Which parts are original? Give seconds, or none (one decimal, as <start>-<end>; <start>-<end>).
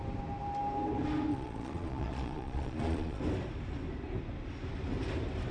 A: 0.0-1.3; 3.2-5.5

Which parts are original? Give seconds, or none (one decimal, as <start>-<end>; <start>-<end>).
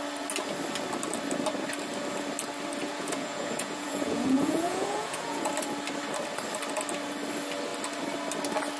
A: 0.0-2.8; 5.5-8.8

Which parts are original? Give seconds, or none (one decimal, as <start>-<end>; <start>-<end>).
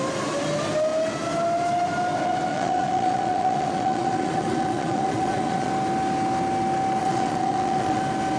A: 0.0-2.5; 5.7-7.0; 8.0-8.4